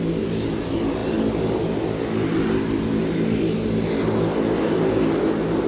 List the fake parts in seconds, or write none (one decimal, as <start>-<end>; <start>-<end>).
none